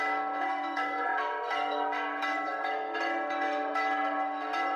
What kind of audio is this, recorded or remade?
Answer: remade